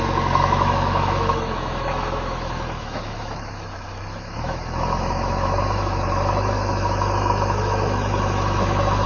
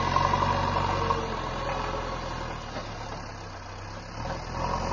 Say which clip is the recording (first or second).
second